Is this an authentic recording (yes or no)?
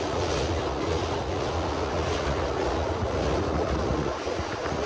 no